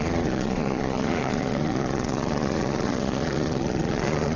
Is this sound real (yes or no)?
no